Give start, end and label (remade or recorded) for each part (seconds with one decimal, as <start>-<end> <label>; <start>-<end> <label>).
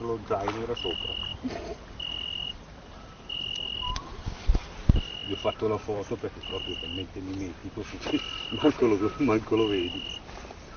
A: 0.0-1.3 recorded; 1.3-3.6 remade; 3.6-5.2 recorded; 5.2-6.8 remade; 6.8-10.8 recorded